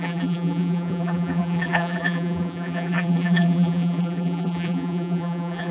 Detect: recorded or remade remade